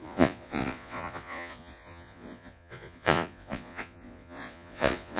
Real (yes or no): no